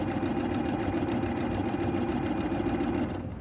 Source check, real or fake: real